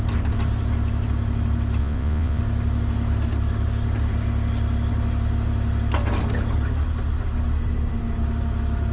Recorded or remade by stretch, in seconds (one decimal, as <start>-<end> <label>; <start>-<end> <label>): 0.0-1.8 recorded; 1.8-2.4 remade; 2.4-8.9 recorded

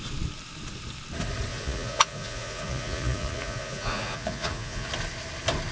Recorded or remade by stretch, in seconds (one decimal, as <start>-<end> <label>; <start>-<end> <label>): 0.0-1.5 recorded; 1.5-4.9 remade; 4.9-5.7 recorded

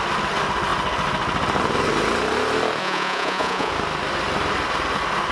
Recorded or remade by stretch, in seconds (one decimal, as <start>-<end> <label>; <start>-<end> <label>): 0.0-2.8 recorded; 2.8-3.7 remade; 3.7-5.3 recorded